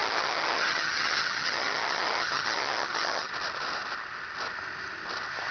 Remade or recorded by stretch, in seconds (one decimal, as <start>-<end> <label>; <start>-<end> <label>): 0.0-3.3 remade; 3.3-5.5 recorded